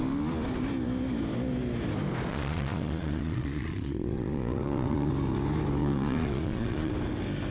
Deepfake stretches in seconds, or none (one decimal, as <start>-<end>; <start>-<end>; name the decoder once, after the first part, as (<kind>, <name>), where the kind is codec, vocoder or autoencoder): 2.3-5.1 (vocoder, Vocos); 5.8-6.9